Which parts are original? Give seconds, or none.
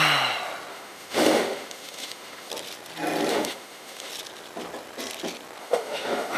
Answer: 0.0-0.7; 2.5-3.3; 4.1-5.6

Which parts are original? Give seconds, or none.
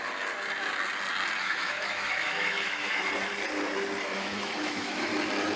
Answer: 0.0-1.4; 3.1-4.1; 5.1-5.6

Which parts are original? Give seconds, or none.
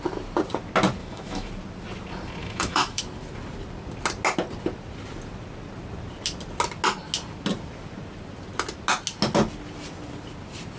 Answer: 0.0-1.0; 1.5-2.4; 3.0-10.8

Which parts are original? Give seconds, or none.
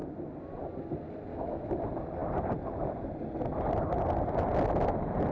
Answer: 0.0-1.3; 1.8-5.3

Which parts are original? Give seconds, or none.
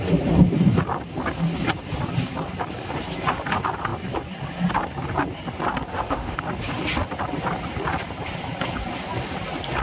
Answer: 0.0-5.9; 6.4-9.8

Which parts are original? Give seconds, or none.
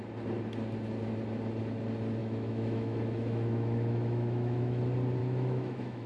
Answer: 0.0-2.2; 4.8-5.2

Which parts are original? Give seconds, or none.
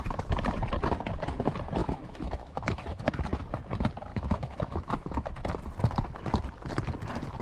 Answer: 0.0-1.8; 3.1-4.1; 5.3-7.4